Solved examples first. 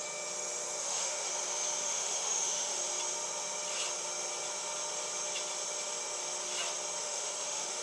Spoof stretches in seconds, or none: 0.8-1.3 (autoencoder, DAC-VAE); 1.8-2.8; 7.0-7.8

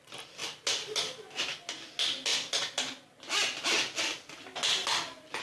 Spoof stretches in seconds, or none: none

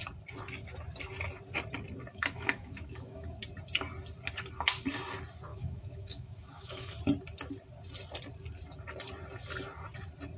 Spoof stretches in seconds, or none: 2.1-3.4 (autoencoder, DAC-VAE); 5.5-6.9

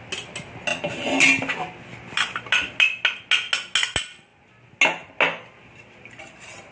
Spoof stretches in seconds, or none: none

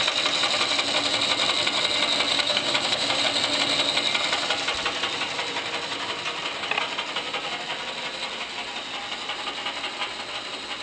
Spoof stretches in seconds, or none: 2.3-3.2 (codec, DAC)

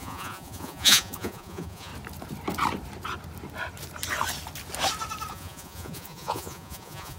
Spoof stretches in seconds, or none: 0.0-1.9 (vocoder, Vocos); 5.3-7.2

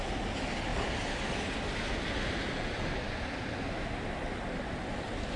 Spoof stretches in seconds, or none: none

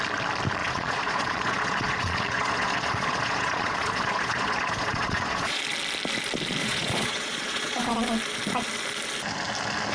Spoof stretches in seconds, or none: 0.6-5.6 (vocoder, Vocos); 6.6-7.9